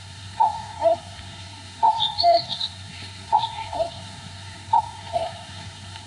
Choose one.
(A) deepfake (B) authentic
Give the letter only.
A